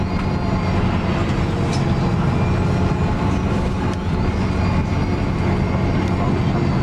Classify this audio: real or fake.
real